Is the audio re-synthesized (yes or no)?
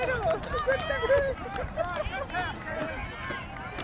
no